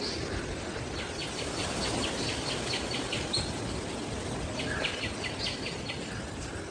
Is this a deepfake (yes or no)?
no